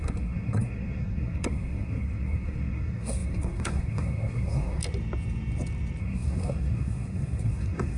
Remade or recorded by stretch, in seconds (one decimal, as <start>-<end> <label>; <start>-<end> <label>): 0.0-4.8 remade; 4.8-6.0 recorded; 6.0-8.0 remade